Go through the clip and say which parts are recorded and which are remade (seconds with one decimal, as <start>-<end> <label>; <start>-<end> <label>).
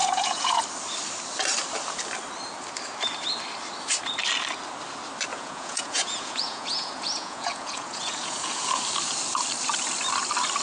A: 0.0-0.6 remade; 0.6-5.3 recorded; 5.3-8.8 remade; 8.8-10.6 recorded